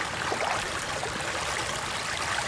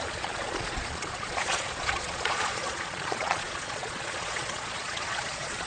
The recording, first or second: first